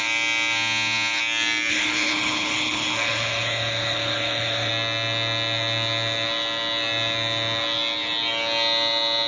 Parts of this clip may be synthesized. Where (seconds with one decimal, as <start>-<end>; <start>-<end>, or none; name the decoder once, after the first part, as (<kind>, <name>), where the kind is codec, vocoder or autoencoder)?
1.7-4.7 (codec, HILCodec)